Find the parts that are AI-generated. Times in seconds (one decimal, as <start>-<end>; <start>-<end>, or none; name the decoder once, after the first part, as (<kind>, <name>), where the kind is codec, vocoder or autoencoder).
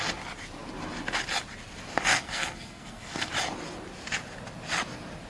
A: 2.1-3.3 (codec, SNAC)